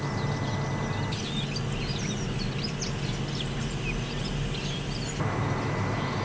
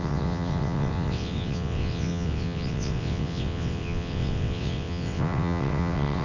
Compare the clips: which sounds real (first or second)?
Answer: first